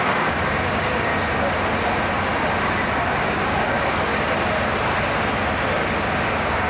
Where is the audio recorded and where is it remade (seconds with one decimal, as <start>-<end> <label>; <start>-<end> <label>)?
0.0-1.1 remade; 1.1-3.2 recorded; 3.2-4.1 remade; 4.1-6.2 recorded; 6.2-6.7 remade